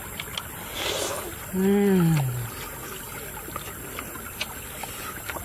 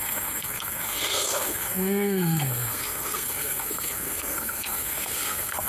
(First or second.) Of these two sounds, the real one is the first